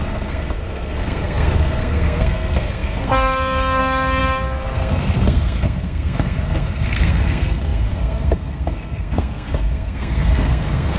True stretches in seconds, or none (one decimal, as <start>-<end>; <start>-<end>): none